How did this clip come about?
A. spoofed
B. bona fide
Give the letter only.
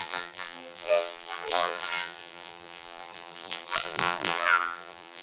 A